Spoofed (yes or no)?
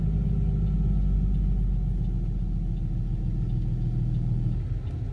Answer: no